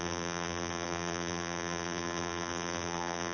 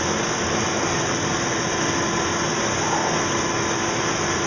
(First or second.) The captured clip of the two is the second